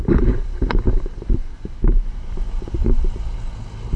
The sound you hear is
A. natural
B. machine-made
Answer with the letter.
A